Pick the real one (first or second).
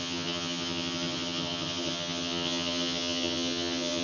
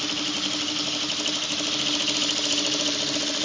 second